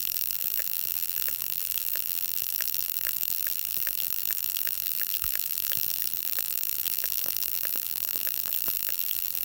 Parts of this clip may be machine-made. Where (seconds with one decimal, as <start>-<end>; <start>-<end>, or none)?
0.0-9.4